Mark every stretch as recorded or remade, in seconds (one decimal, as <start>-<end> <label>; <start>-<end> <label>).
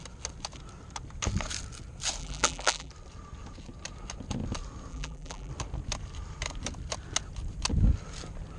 0.0-2.2 recorded; 2.2-2.9 remade; 2.9-4.9 recorded; 4.9-5.5 remade; 5.5-8.6 recorded